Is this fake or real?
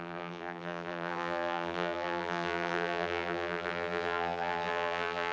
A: fake